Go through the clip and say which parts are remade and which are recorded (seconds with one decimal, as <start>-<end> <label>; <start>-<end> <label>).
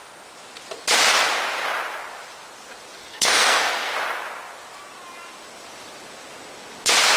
0.0-3.0 recorded; 3.0-3.9 remade; 3.9-7.2 recorded